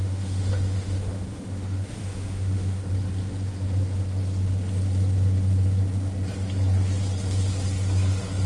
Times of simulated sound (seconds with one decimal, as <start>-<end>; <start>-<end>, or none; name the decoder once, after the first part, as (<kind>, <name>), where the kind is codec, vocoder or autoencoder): 0.0-2.8 (autoencoder, DAC-VAE)